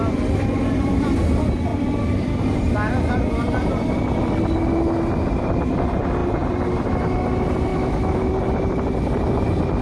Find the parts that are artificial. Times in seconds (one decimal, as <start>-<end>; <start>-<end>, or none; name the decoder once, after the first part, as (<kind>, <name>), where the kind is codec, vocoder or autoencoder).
7.7-8.3 (autoencoder, DAC-VAE)